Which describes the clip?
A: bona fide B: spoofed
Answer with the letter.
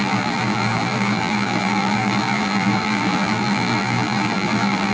B